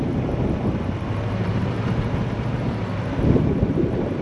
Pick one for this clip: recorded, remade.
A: remade